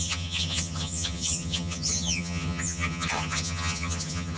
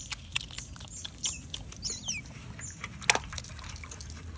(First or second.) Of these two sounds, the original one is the second